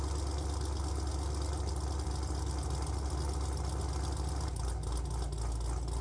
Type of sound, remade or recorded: recorded